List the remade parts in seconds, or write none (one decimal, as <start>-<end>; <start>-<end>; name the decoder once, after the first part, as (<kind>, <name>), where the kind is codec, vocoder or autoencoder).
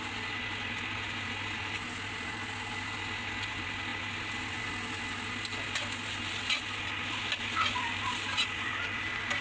none